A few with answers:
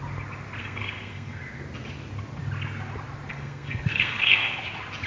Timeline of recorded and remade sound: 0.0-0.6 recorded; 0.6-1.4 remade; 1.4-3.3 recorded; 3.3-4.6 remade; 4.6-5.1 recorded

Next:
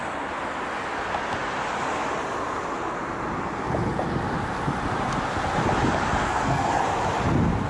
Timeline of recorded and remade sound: 0.0-6.2 recorded; 6.2-6.8 remade; 6.8-7.7 recorded

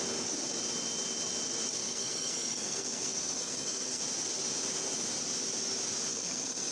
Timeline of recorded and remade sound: 0.0-1.8 recorded; 1.8-4.0 remade; 4.0-6.1 recorded; 6.1-6.7 remade